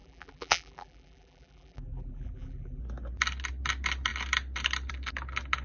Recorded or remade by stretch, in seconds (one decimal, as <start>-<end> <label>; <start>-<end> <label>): 0.0-2.8 remade; 2.8-5.6 recorded